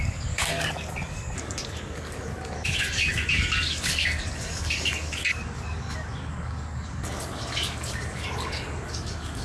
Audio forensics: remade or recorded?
remade